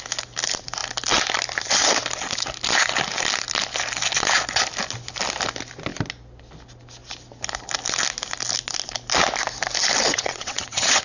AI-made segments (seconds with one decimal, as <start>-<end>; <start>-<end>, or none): 10.1-11.0